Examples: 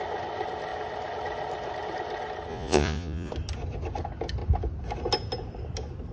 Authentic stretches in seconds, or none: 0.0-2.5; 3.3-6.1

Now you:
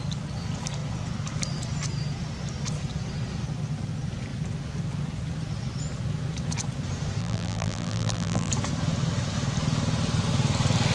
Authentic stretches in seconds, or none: 0.0-7.2; 8.5-10.9

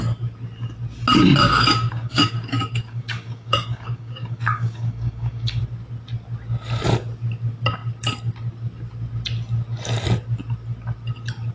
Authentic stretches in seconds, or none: 0.0-1.5; 5.6-11.5

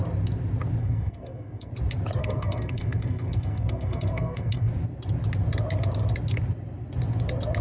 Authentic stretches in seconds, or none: 0.0-0.8; 1.7-2.2; 4.7-7.6

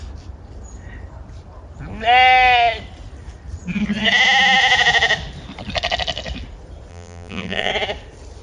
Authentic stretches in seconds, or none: 0.0-6.9; 7.7-8.4